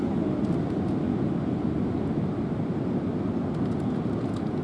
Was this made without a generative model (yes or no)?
yes